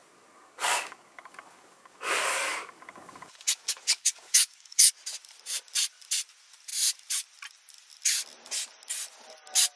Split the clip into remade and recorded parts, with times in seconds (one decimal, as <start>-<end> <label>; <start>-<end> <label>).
0.0-4.9 remade; 4.9-9.8 recorded